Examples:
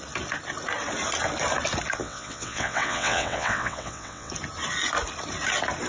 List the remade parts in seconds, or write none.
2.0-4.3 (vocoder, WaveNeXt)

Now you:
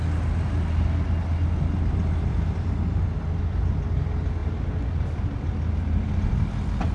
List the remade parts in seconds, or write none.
none

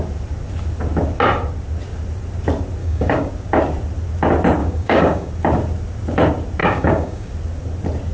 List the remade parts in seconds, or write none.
2.8-3.3 (codec, DAC); 4.6-5.3; 6.6-7.3